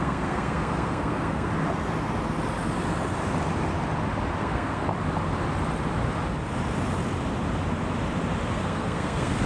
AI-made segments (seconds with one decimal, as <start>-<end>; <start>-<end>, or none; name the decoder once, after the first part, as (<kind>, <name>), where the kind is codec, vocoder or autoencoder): 0.0-1.5 (codec, SNAC); 4.4-4.9; 8.5-9.5